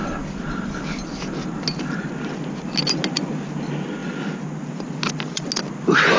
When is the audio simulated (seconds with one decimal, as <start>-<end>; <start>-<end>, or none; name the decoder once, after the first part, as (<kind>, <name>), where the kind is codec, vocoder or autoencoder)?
none